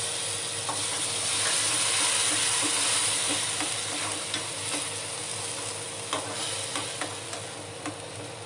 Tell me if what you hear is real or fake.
real